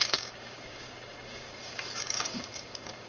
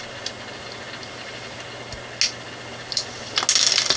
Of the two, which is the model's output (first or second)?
first